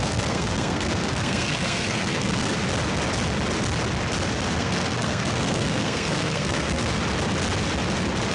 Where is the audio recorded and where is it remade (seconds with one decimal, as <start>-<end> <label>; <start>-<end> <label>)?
0.0-2.6 remade; 2.6-4.5 recorded; 4.5-7.0 remade; 7.0-8.3 recorded